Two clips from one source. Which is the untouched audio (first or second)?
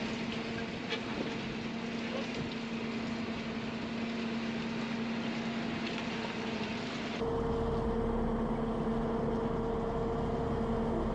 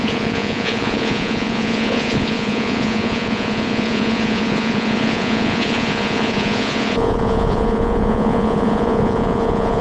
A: first